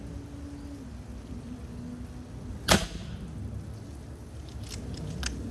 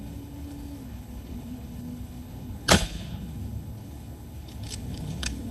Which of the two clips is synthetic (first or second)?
second